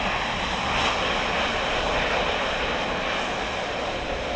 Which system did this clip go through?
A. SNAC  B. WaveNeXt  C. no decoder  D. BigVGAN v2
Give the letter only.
C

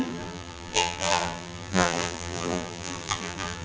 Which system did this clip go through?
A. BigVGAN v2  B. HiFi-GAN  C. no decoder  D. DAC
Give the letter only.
A